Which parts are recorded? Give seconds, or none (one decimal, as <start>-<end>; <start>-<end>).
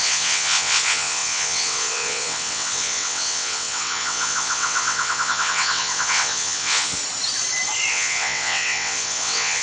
7.0-7.9